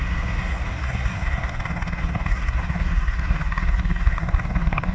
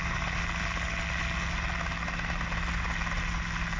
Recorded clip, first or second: second